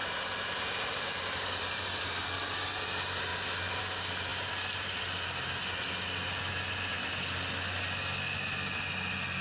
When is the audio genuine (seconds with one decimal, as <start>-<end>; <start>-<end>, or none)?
2.0-9.4